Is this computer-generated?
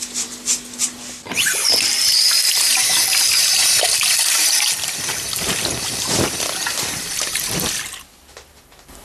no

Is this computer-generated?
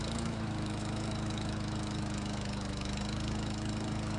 yes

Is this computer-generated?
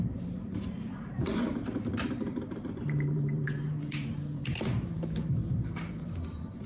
yes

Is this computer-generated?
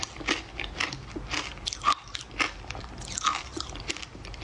no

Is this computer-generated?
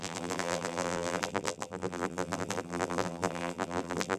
yes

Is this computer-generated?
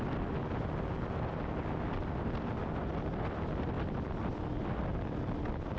no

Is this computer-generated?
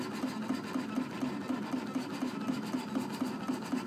no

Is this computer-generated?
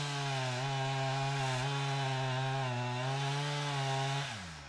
no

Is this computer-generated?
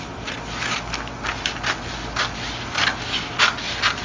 no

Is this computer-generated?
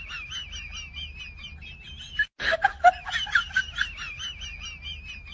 no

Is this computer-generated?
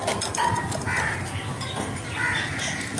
no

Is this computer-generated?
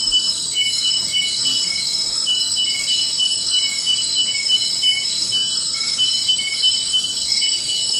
yes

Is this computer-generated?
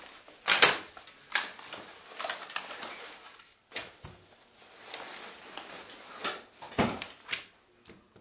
no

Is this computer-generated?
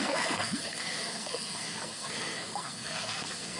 yes